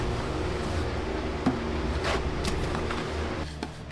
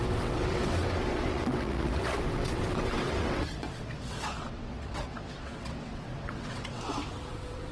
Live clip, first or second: first